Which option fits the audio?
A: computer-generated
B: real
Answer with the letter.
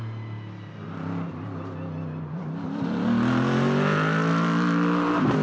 B